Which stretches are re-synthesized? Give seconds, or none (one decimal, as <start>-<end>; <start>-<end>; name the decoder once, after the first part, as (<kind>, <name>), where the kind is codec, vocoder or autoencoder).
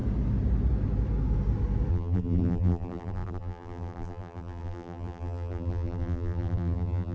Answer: 1.9-7.1 (vocoder, BigVGAN v2)